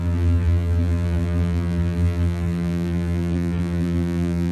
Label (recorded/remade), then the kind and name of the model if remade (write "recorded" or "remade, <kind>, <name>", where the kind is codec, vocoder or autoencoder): remade, vocoder, BigVGAN v2